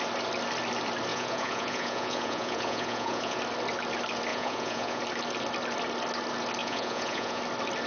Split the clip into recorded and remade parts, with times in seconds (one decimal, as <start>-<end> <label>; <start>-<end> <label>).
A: 0.0-1.1 recorded; 1.1-3.4 remade; 3.4-4.3 recorded; 4.3-5.0 remade; 5.0-6.6 recorded; 6.6-7.4 remade; 7.4-7.9 recorded